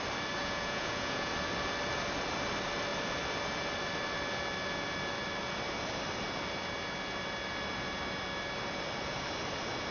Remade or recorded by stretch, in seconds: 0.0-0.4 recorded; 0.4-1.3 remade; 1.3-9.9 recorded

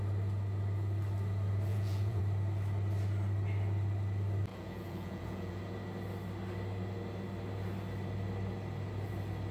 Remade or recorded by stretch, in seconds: 0.0-1.7 recorded; 1.7-2.2 remade; 2.2-4.5 recorded; 4.5-5.6 remade; 5.6-9.5 recorded